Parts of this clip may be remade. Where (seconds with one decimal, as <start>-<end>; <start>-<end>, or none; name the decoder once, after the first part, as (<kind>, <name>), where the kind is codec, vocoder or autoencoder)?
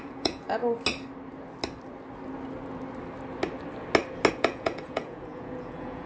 0.0-0.6 (vocoder, Vocos); 4.3-6.1